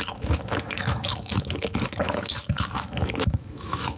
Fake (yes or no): yes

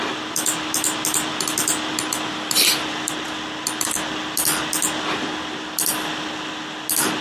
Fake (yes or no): no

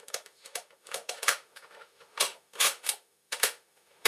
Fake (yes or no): yes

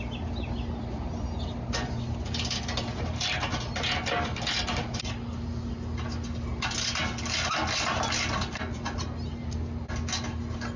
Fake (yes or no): no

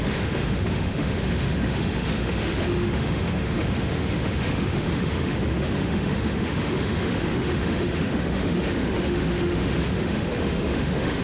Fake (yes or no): yes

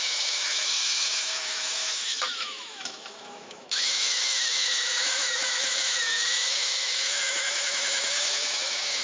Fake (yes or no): yes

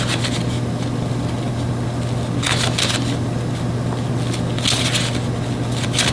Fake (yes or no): no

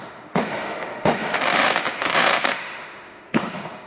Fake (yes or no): yes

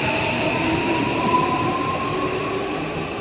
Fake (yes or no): no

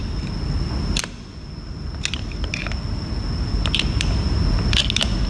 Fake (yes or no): no